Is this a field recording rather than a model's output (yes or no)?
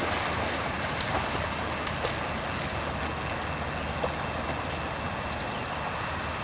yes